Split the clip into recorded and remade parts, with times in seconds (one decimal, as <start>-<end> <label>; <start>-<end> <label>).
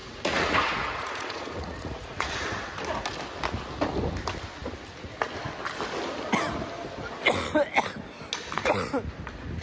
0.0-2.6 remade; 2.6-9.6 recorded